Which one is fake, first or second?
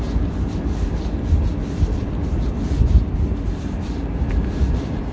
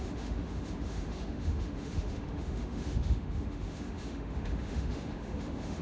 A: second